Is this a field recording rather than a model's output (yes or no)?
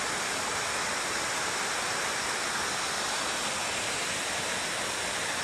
yes